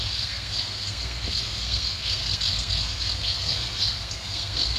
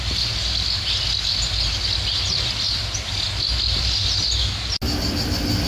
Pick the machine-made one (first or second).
first